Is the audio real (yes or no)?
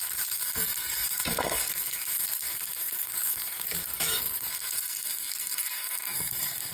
no